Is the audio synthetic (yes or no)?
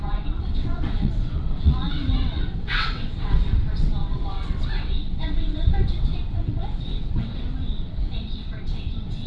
yes